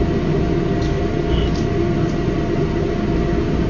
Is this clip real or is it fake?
real